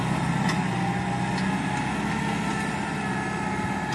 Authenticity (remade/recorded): recorded